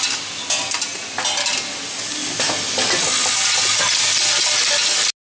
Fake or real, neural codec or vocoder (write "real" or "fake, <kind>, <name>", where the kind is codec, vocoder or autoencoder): real